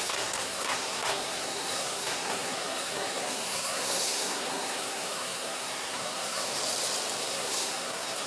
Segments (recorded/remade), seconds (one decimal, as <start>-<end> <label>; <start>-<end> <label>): 0.0-6.5 remade; 6.5-7.2 recorded; 7.2-8.3 remade